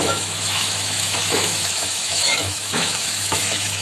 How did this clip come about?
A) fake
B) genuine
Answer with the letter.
A